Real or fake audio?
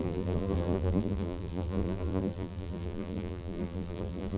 fake